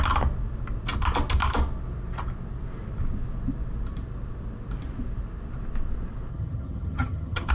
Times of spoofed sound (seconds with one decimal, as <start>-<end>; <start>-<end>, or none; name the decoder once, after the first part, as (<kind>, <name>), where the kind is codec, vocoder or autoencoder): 6.3-7.5 (vocoder, HiFi-GAN)